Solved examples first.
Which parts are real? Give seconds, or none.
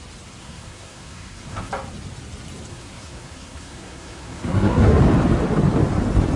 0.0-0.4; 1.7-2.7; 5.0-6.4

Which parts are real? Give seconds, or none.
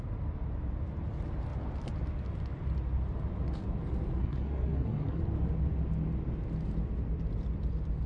0.0-4.2; 5.2-8.1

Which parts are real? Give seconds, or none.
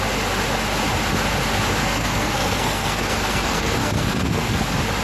0.0-1.8; 4.6-5.0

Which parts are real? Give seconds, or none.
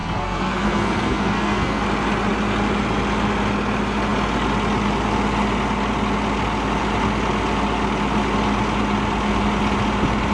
1.8-10.3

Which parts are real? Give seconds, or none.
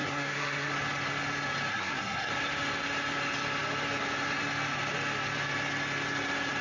0.7-1.7; 2.3-6.6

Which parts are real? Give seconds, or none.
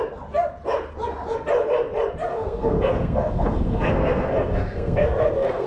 0.0-2.3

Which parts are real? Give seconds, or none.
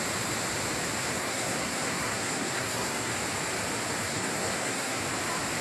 0.0-1.0; 3.1-4.0; 5.0-5.6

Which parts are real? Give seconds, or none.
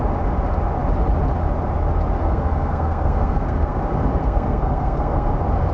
0.0-2.2; 3.8-4.2; 5.3-5.7